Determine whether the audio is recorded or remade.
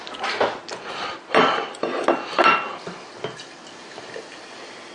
recorded